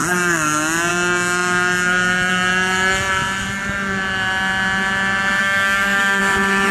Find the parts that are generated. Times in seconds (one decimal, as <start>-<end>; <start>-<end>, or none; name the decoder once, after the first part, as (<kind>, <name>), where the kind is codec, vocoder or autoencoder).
5.4-6.2 (codec, SNAC)